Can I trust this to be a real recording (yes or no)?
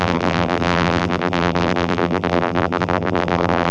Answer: no